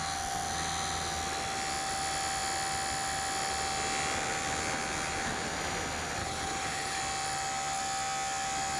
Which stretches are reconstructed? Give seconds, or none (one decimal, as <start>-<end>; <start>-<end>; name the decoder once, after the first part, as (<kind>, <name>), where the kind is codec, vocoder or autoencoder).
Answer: 6.2-7.0 (codec, HILCodec)